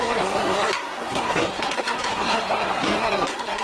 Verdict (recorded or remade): remade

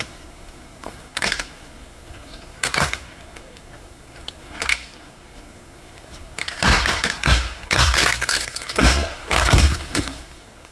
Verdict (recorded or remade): remade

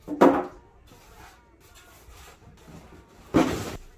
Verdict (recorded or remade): recorded